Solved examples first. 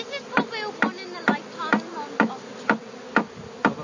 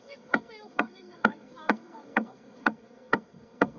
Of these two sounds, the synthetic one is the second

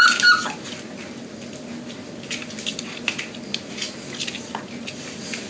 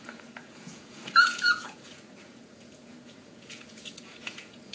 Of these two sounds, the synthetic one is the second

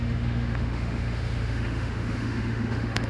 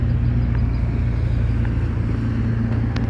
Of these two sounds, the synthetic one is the first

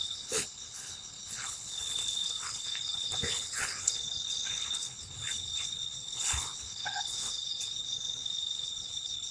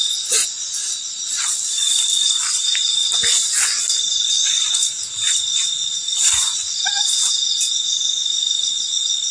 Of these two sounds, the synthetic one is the first